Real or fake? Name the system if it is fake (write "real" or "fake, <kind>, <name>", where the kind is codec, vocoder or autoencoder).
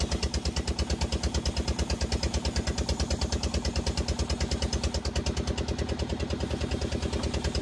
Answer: real